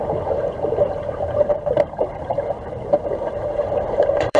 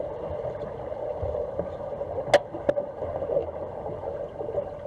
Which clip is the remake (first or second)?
first